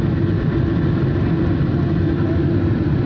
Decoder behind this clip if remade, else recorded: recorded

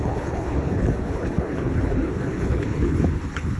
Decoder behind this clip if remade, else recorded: remade, codec, HILCodec